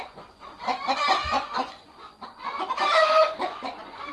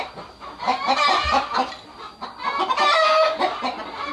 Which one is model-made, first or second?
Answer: first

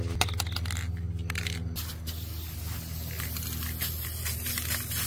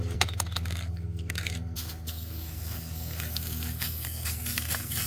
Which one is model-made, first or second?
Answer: second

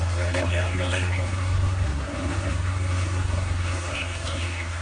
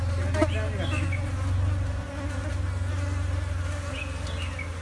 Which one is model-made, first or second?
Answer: first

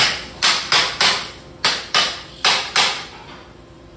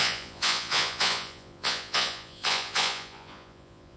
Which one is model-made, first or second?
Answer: second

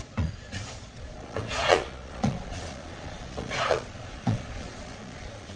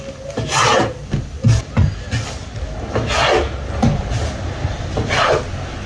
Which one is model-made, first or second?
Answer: first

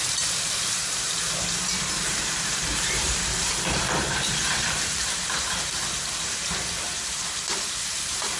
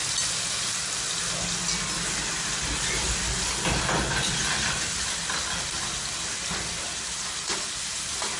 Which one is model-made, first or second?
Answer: first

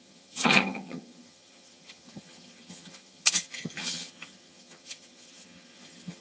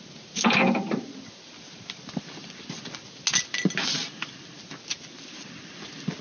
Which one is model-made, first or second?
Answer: first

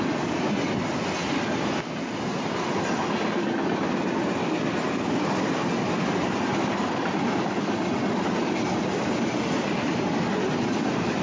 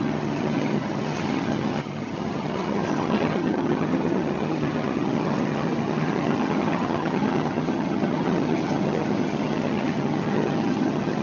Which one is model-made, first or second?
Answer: second